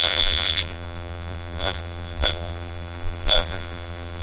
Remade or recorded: remade